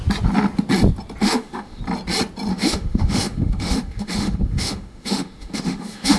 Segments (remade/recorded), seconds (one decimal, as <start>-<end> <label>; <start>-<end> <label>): 0.0-1.2 recorded; 1.2-1.8 remade; 1.8-2.5 recorded; 2.5-6.2 remade